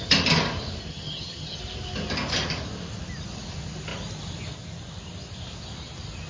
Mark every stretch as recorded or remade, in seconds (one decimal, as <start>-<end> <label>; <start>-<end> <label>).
0.0-0.9 recorded; 0.9-1.6 remade; 1.6-6.3 recorded